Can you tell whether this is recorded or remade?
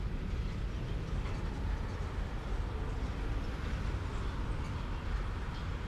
recorded